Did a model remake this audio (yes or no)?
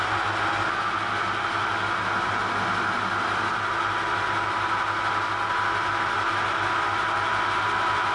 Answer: no